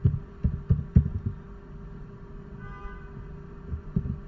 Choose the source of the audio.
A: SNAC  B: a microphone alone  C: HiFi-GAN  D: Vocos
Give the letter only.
B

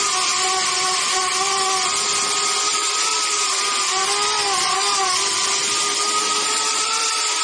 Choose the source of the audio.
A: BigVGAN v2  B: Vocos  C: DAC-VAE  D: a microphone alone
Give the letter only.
D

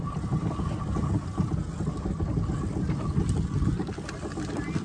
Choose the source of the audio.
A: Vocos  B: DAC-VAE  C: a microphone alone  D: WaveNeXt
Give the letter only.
C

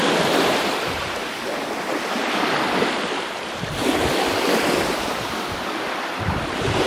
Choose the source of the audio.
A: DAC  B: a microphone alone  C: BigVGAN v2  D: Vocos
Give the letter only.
C